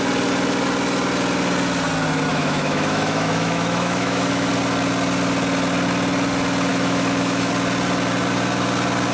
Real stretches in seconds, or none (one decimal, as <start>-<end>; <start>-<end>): 0.0-2.3; 4.5-6.7; 7.5-9.1